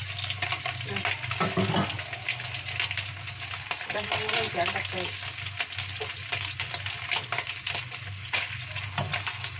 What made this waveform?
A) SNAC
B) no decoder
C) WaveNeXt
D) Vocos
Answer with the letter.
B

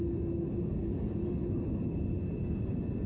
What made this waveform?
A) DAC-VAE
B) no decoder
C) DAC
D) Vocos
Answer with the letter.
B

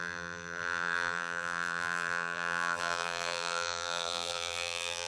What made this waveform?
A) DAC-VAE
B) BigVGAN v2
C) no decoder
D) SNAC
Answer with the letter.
B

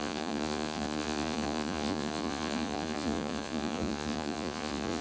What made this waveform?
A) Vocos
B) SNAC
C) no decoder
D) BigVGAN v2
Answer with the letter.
A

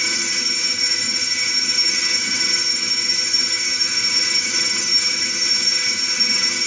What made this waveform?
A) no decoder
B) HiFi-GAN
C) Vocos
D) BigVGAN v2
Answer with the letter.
B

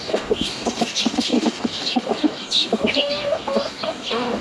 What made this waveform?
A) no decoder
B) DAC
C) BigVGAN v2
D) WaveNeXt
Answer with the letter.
B